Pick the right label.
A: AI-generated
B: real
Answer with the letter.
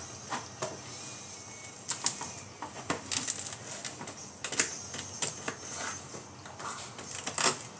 B